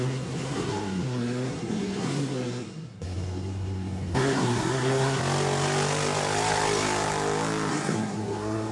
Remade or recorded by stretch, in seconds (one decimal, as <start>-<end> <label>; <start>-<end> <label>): 0.0-5.2 remade; 5.2-7.7 recorded; 7.7-8.7 remade